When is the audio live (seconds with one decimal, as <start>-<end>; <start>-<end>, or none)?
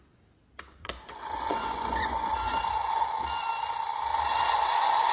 0.0-0.7; 3.0-4.1